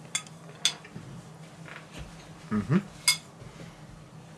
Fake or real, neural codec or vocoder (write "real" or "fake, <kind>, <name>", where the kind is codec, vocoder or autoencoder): real